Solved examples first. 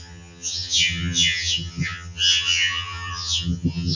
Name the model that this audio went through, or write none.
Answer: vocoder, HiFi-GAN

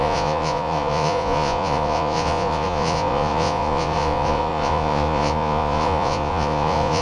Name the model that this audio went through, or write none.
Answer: vocoder, Vocos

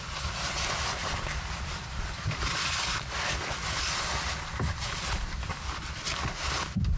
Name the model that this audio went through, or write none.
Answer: none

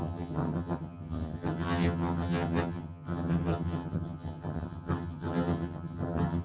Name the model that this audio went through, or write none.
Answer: vocoder, HiFi-GAN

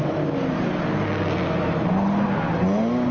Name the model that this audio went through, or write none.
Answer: none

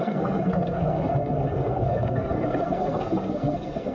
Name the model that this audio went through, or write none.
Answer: codec, SNAC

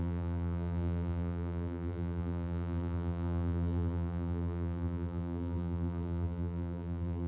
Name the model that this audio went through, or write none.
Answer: vocoder, BigVGAN v2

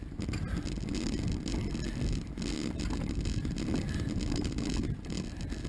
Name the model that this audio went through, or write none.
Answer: none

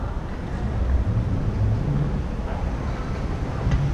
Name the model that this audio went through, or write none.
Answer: none